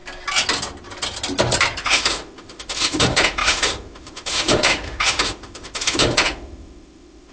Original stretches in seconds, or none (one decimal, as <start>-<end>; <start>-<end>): 0.0-1.8